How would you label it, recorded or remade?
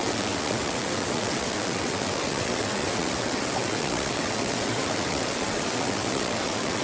remade